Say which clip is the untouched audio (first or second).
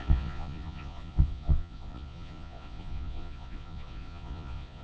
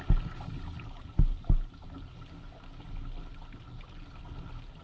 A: second